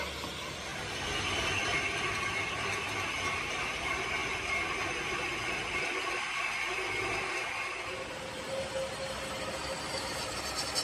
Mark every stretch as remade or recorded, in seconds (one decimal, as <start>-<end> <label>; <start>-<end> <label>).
0.0-10.8 recorded